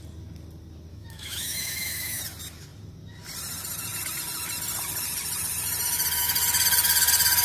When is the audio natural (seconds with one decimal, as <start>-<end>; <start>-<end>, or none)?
0.0-0.9; 2.2-7.4